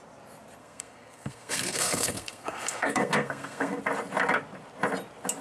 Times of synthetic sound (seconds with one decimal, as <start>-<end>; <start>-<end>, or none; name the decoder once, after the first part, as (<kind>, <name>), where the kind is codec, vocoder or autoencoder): 0.6-3.8 (codec, SNAC)